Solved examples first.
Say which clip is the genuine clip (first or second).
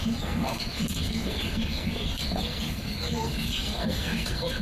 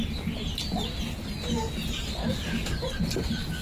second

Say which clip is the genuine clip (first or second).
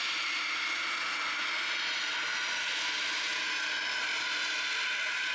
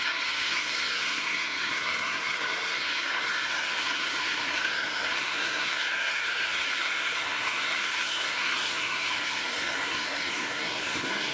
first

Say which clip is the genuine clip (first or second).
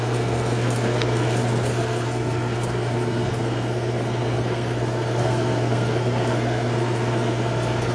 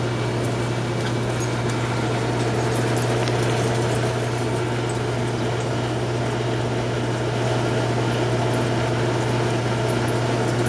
second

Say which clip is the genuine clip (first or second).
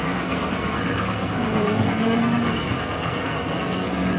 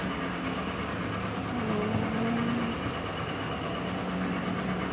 second